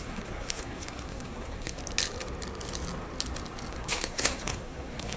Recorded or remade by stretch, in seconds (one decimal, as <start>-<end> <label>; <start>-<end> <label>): 0.0-1.8 remade; 1.8-3.7 recorded; 3.7-5.2 remade